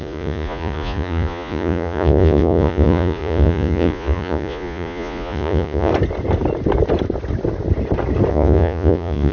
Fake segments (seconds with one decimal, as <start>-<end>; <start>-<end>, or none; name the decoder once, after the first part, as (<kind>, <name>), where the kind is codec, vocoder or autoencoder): 0.0-5.9 (vocoder, Vocos); 8.3-9.3